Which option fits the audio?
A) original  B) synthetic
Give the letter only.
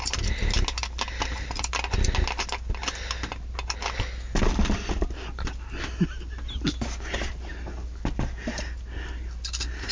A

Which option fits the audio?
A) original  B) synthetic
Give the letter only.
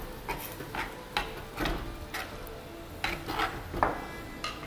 A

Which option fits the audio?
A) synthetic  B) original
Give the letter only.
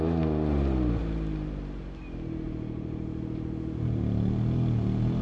B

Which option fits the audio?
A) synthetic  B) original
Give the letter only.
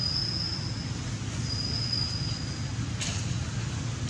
B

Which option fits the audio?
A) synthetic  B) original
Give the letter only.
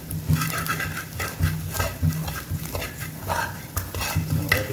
B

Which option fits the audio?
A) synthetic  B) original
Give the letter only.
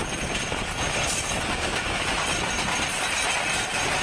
B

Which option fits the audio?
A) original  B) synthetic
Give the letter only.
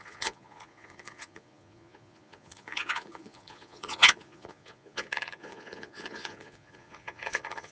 B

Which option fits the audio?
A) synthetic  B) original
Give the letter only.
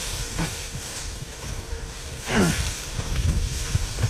A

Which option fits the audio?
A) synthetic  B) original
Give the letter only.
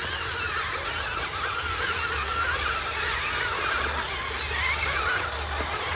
B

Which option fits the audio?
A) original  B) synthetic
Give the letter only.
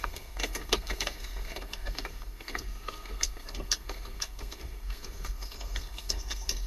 B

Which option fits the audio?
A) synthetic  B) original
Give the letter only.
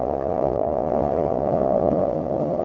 A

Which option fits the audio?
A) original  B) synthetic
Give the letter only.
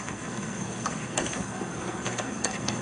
B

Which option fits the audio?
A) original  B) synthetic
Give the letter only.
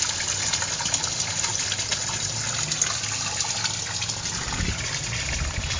A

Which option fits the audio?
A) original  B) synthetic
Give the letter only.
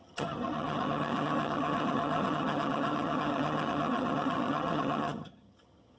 B